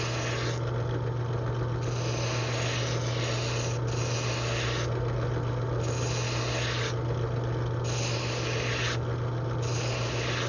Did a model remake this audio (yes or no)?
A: no